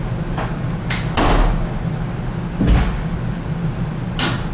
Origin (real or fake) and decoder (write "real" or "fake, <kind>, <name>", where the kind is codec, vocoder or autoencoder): real